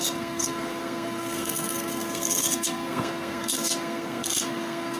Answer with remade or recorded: remade